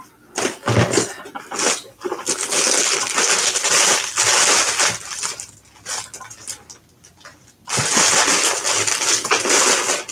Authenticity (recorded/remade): recorded